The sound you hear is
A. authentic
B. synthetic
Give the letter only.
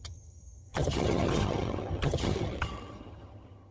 B